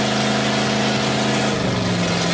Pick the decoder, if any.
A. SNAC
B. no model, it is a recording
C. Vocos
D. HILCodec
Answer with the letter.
B